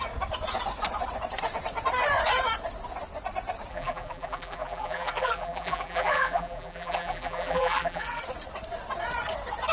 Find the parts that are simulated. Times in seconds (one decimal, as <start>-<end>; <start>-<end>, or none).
3.7-8.2